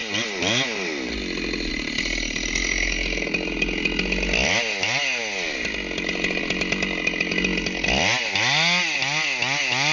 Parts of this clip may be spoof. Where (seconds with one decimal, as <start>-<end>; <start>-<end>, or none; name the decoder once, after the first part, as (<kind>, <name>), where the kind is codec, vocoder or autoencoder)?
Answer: none